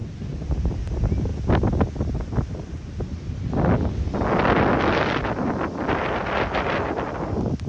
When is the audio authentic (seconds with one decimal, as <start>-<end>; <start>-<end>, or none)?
0.0-7.7